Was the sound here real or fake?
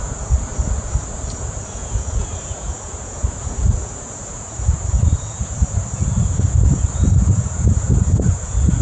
fake